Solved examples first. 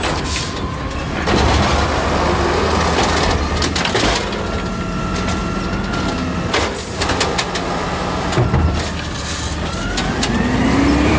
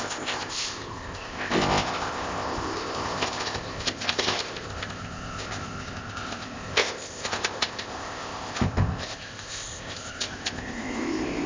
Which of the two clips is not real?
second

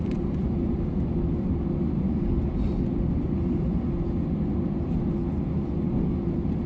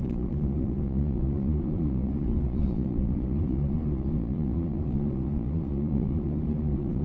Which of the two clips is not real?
second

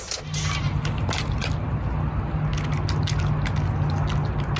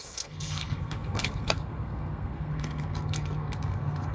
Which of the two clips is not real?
second